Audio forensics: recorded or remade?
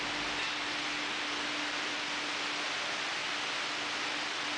recorded